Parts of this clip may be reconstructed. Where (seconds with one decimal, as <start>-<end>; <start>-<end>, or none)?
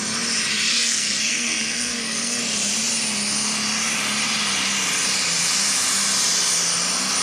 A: 0.7-2.4